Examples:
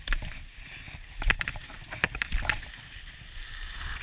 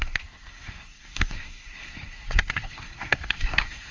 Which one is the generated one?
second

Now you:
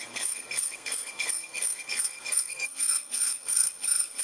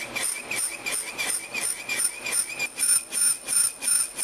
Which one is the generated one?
first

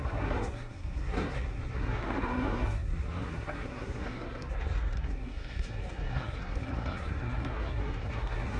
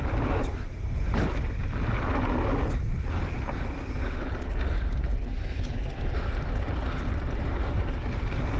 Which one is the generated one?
first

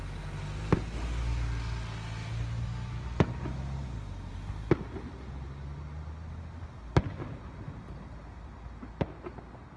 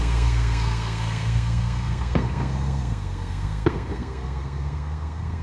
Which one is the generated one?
second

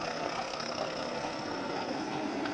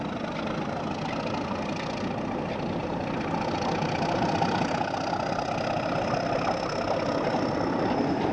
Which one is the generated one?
first